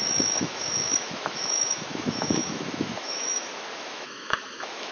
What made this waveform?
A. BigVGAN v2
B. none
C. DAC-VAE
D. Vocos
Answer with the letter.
C